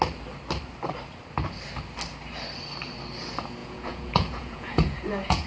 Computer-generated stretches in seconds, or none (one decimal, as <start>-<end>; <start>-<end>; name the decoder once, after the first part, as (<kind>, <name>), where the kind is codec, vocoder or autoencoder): 3.6-5.5 (vocoder, Vocos)